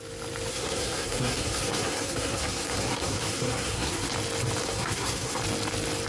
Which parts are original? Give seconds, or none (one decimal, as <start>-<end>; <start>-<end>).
0.0-0.5; 4.1-4.6; 5.4-6.1